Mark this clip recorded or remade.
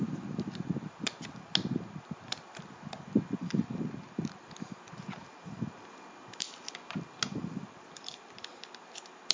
recorded